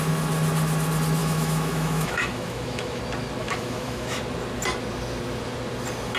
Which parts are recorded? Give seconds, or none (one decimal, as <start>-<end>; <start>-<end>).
0.0-1.2; 3.0-3.4; 4.2-6.2